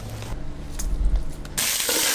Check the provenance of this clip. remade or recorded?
recorded